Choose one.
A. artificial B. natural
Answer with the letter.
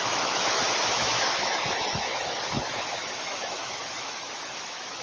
A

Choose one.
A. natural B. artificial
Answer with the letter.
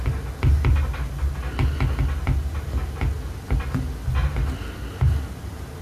A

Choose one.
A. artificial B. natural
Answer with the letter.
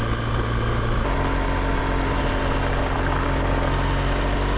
B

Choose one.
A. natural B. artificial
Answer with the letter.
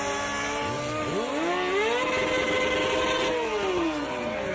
A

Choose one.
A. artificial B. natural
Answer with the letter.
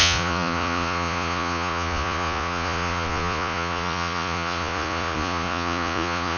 A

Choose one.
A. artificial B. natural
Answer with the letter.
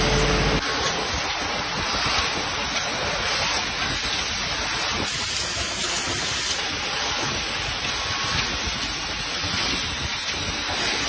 B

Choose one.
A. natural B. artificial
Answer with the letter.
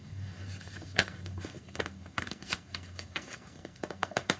B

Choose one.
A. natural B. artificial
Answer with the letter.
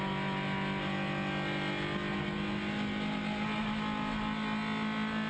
A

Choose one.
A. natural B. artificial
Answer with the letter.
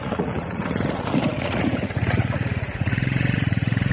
B